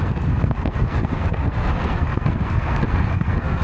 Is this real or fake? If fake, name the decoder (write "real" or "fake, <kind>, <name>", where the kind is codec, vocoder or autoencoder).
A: fake, codec, SNAC